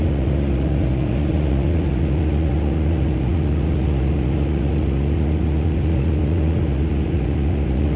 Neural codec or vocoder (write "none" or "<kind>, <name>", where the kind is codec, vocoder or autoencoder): vocoder, Vocos